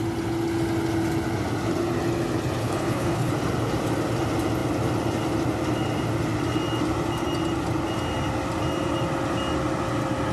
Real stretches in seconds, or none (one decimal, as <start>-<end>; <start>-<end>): 0.0-2.6; 3.3-10.3